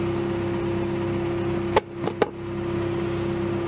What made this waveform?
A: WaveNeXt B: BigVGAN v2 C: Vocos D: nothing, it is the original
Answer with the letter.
D